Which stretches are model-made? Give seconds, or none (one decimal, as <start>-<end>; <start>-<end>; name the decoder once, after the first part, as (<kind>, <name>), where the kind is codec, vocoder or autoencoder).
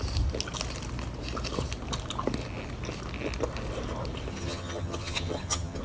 4.3-5.8 (vocoder, HiFi-GAN)